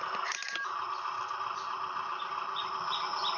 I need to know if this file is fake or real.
real